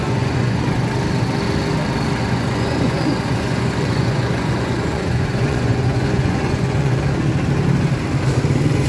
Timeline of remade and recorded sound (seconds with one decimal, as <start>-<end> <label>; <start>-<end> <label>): 0.0-0.9 remade; 0.9-2.2 recorded; 2.2-7.0 remade; 7.0-8.9 recorded